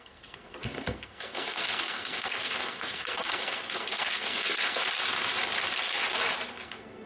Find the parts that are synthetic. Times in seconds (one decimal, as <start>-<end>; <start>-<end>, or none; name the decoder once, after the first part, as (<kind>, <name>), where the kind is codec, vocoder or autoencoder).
0.0-4.8 (codec, SNAC); 6.5-7.1